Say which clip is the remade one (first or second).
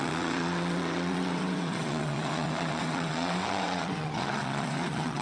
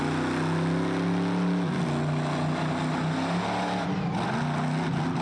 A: first